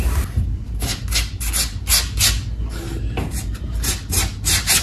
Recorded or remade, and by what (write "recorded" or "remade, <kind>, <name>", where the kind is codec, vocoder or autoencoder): recorded